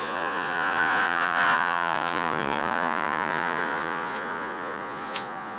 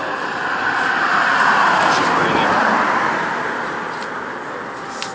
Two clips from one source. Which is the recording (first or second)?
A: second